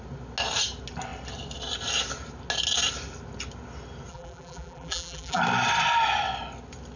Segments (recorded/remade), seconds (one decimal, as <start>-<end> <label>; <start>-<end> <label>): 0.0-4.1 recorded; 4.1-5.4 remade; 5.4-7.0 recorded